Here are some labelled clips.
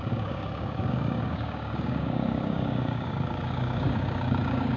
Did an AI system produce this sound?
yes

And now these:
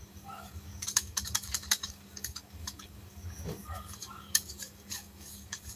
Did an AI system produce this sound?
yes